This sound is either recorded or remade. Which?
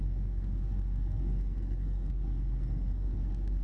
remade